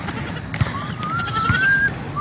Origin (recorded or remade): recorded